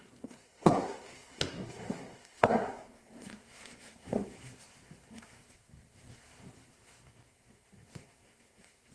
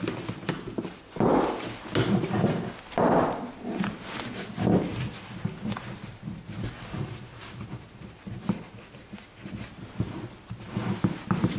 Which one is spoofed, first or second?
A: first